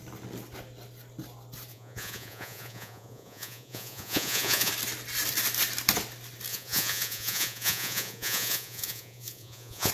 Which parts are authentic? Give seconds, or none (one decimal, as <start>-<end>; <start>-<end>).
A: 0.0-1.7; 4.7-6.5